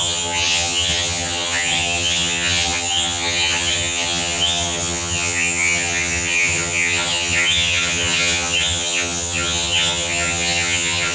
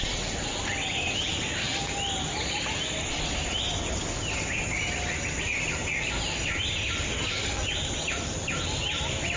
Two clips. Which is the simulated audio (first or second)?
first